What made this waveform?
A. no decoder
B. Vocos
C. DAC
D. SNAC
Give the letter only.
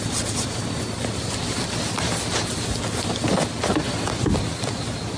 A